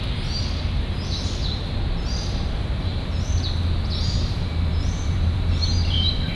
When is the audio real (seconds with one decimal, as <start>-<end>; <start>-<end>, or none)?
2.9-4.3